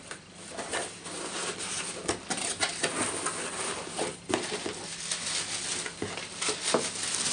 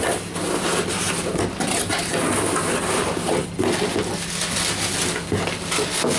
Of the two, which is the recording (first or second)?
second